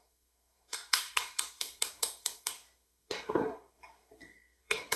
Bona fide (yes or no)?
no